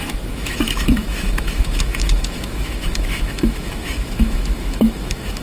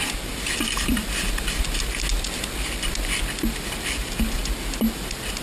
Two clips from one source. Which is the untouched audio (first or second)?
second